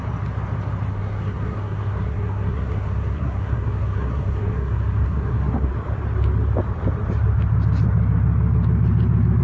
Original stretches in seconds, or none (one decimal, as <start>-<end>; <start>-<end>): 0.0-0.9; 5.7-9.4